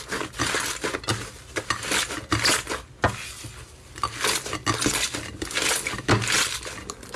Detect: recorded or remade recorded